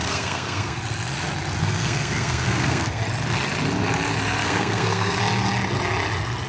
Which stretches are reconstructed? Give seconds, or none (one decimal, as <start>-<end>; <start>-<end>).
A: 0.0-0.8; 1.6-3.0; 4.4-5.2